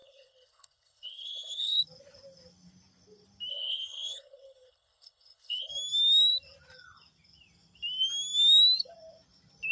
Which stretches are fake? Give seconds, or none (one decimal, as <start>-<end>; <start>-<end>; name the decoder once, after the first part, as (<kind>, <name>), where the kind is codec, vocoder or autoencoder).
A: 0.0-1.8 (codec, HILCodec); 3.5-5.7